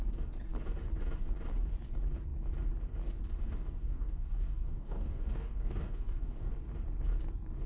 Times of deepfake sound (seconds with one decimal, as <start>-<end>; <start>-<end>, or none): 3.8-6.5